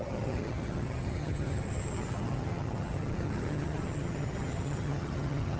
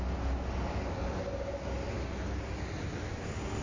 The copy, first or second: first